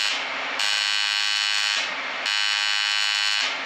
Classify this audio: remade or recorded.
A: recorded